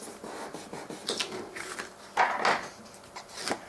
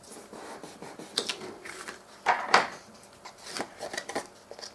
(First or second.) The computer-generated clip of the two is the second